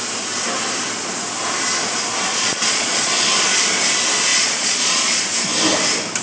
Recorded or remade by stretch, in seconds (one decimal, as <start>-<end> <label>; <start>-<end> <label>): 0.0-2.3 recorded; 2.3-3.1 remade; 3.1-4.3 recorded; 4.3-5.2 remade; 5.2-6.2 recorded